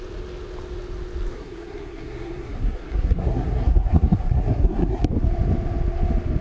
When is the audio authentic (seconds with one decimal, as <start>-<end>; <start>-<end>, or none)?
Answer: 0.0-1.3; 5.1-6.4